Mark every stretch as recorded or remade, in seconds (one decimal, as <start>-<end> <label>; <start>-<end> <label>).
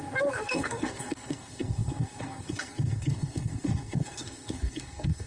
0.0-5.3 remade